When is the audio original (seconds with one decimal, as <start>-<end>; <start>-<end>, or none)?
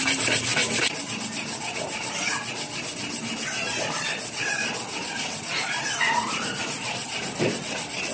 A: 0.5-3.8